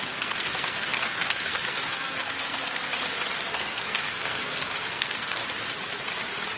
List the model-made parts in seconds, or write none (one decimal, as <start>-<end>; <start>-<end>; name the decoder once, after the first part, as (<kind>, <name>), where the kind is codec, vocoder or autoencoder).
0.0-2.8 (codec, SNAC); 3.5-5.4